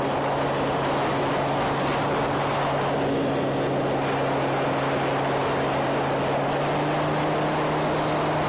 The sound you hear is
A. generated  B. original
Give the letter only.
B